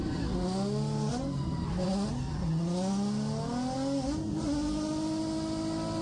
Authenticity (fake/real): real